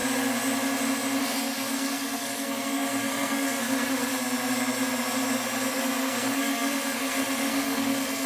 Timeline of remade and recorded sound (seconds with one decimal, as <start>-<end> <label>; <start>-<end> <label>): 0.0-1.2 recorded; 1.2-4.1 remade; 4.1-5.7 recorded; 5.7-8.3 remade